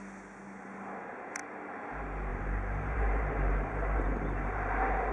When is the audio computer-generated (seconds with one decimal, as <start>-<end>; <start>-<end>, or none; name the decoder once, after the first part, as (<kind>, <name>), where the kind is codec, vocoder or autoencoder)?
2.3-5.1 (vocoder, BigVGAN v2)